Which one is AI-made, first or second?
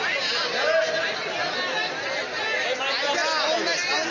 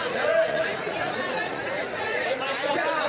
second